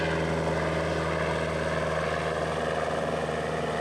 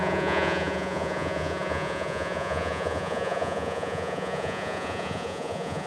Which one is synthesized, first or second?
second